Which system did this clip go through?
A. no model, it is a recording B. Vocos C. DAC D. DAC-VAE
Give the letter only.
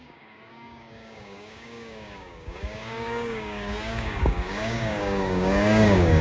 C